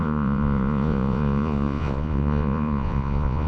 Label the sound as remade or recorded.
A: remade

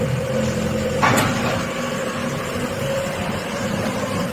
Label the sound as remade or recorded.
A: recorded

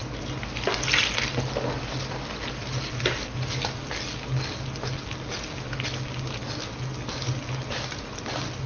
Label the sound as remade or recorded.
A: recorded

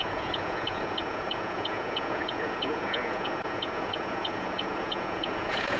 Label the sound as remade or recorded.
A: remade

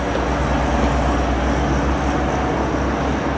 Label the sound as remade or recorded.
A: recorded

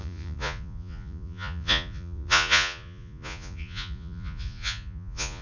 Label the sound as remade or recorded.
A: remade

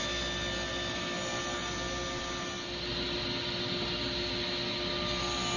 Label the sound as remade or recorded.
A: recorded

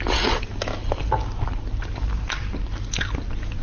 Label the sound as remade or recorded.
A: recorded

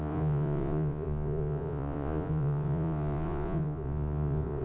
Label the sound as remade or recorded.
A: remade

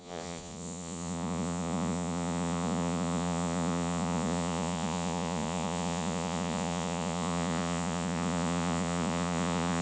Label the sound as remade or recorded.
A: remade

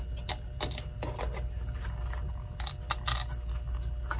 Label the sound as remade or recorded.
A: recorded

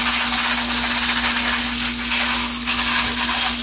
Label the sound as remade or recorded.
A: recorded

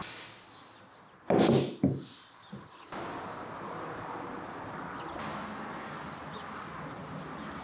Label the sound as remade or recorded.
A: recorded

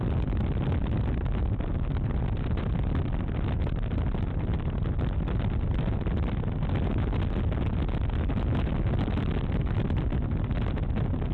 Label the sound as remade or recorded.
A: recorded